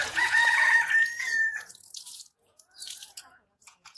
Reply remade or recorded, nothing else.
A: remade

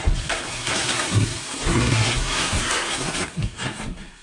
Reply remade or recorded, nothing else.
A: remade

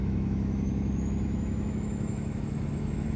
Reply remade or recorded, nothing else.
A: remade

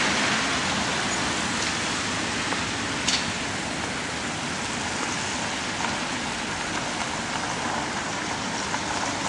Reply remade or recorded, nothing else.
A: recorded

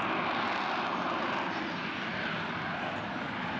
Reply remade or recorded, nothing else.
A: recorded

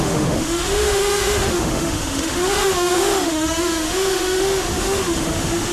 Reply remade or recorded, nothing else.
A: remade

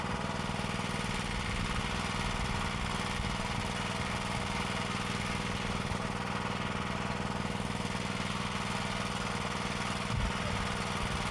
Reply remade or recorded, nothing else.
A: recorded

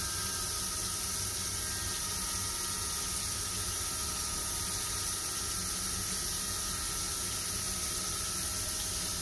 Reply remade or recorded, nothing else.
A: recorded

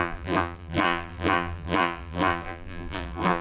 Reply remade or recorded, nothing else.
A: remade